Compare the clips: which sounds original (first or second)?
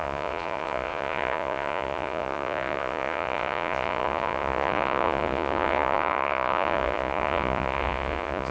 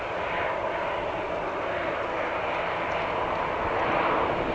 second